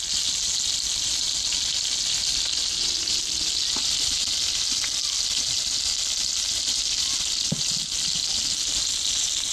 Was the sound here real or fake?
real